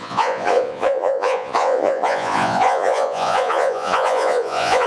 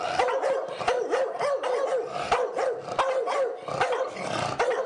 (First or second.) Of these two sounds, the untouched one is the second